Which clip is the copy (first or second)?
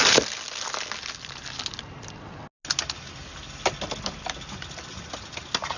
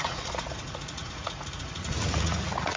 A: second